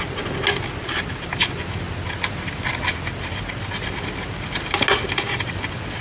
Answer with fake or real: real